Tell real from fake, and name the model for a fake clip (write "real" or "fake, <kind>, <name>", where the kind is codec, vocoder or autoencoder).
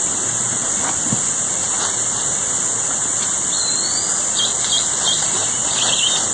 real